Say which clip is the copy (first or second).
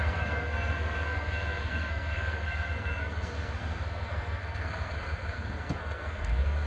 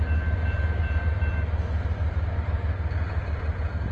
first